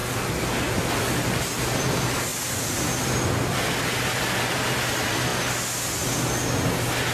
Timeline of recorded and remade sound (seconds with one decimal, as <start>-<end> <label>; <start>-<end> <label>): 0.0-2.3 recorded; 2.3-4.2 remade; 4.2-7.1 recorded